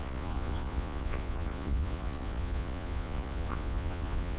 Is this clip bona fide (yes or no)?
no